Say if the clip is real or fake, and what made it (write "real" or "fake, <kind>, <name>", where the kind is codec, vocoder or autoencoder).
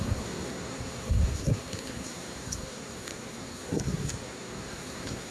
fake, codec, SNAC